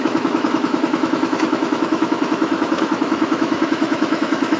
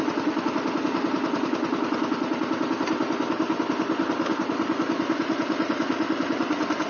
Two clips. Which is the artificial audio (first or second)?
first